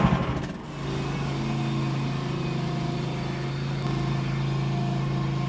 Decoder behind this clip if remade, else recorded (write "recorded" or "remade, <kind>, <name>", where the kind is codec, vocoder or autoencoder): recorded